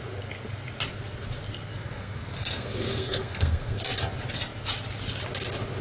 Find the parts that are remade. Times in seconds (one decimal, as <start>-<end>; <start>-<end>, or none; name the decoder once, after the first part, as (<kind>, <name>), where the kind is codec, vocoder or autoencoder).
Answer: 1.7-3.8 (codec, SNAC)